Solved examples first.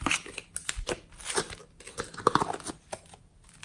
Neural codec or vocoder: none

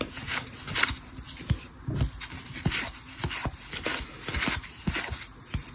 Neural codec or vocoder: none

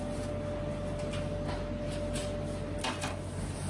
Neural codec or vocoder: none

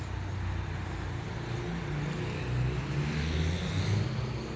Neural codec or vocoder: none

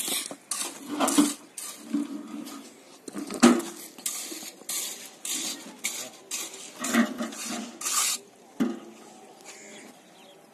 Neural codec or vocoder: none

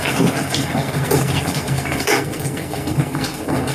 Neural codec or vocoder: codec, SNAC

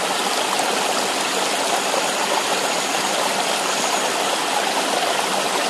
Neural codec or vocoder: none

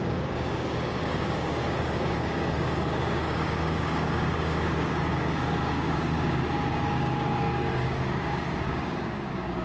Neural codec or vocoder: codec, DAC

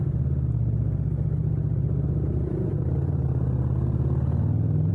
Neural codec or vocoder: none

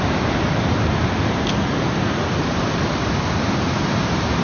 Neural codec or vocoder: none